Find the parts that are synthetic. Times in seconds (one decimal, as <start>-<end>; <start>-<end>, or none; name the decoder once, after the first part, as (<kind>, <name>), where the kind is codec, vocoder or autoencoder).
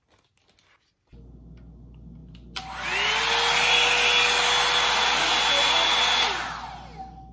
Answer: none